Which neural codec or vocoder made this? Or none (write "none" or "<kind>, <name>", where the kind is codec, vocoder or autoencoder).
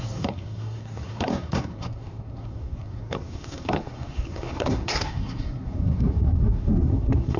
codec, SNAC